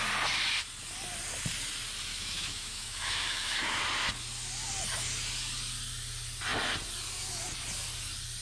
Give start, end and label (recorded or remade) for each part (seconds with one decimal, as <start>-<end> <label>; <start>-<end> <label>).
0.0-2.1 recorded; 2.1-3.8 remade; 3.8-8.4 recorded